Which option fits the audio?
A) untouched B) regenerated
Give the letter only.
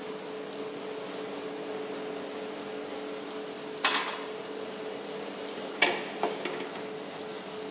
A